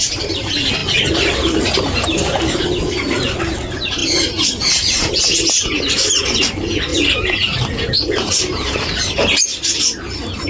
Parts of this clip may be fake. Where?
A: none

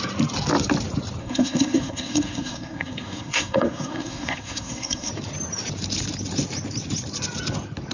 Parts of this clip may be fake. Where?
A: 1.2-5.1 (codec, SNAC)

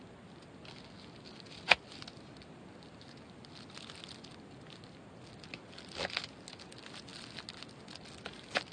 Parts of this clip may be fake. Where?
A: none